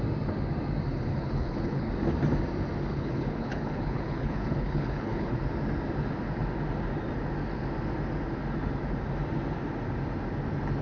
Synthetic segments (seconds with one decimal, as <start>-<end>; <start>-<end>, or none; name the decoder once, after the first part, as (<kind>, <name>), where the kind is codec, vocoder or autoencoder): 1.1-1.9 (codec, HILCodec); 2.9-5.4